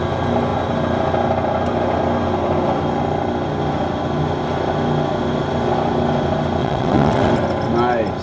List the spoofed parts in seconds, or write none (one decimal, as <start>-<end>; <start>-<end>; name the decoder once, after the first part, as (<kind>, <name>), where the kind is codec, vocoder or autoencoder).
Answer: 6.6-7.3 (vocoder, WaveNeXt)